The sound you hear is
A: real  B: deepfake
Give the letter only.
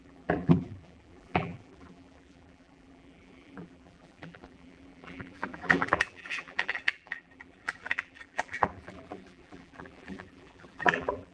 B